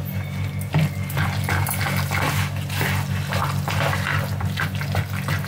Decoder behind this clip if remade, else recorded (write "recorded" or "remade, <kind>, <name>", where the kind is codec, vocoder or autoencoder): recorded